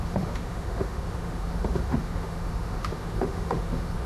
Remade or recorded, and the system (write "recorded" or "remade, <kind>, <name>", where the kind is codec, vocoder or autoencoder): remade, autoencoder, DAC-VAE